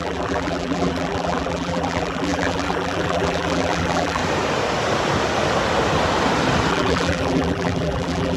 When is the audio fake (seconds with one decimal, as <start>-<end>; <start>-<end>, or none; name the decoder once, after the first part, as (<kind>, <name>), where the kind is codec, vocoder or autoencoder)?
0.0-4.2 (vocoder, BigVGAN v2); 6.7-8.4